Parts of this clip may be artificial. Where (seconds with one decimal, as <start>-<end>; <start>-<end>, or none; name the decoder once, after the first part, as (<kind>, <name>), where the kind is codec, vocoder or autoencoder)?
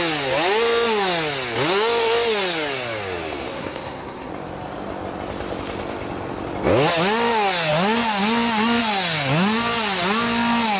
3.5-4.3 (codec, SNAC)